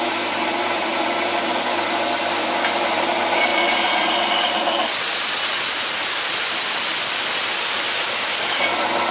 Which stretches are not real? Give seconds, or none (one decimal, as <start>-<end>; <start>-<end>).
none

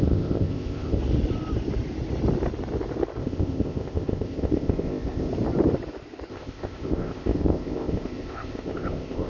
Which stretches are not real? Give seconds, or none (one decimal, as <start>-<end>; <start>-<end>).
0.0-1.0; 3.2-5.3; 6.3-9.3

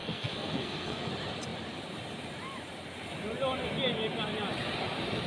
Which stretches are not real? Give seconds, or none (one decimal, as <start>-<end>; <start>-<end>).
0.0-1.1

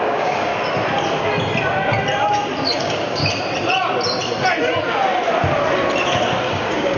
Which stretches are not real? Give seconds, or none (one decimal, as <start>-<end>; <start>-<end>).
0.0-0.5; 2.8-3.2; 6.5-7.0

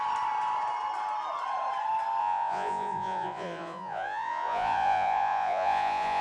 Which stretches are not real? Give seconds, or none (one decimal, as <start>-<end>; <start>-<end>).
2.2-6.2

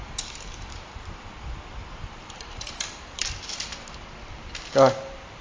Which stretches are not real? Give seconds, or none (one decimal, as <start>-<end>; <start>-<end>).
0.0-1.3; 1.8-3.3

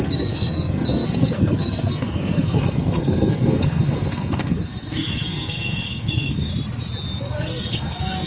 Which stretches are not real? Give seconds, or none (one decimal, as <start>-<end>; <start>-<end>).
0.0-6.5; 7.3-8.3